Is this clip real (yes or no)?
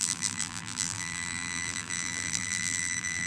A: no